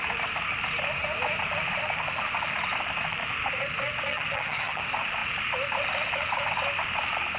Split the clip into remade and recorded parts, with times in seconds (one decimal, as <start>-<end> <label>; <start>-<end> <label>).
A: 0.0-4.1 recorded; 4.1-4.8 remade; 4.8-7.4 recorded